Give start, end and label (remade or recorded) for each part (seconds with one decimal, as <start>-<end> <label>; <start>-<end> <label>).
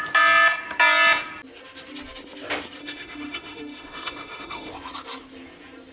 0.0-2.8 recorded; 2.8-4.7 remade; 4.7-5.9 recorded